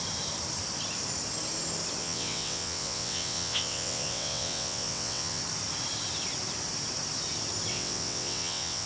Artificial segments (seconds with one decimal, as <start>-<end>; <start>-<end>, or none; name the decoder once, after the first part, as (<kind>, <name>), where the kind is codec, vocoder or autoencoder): 2.0-5.4 (vocoder, WaveNeXt); 7.7-8.9